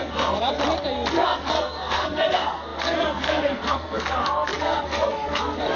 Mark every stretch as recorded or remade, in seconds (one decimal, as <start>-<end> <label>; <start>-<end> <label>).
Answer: 0.0-0.6 remade; 0.6-1.1 recorded; 1.1-5.8 remade